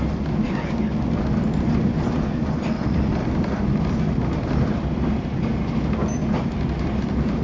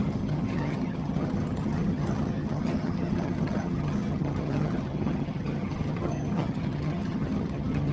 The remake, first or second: second